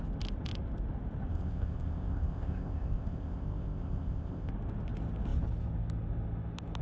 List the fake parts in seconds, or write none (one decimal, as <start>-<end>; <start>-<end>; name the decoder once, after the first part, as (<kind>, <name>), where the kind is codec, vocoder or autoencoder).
1.3-4.5 (codec, ZipCodec)